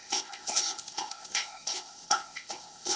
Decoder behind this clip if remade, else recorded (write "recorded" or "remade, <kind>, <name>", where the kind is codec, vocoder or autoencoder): remade, codec, ZipCodec